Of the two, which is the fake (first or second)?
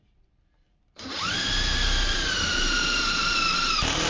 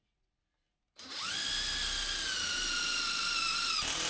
first